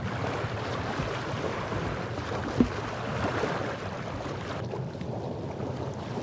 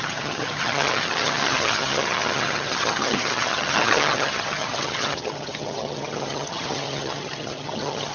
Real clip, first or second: first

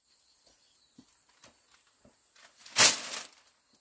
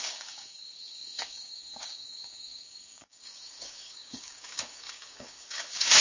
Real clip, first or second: first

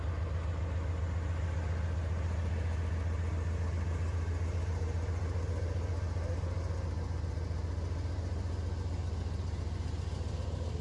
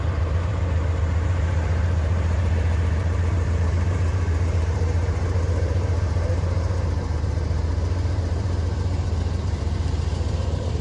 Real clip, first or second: first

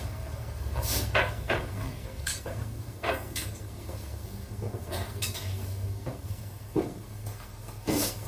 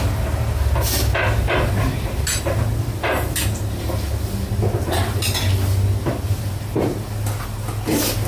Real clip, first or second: second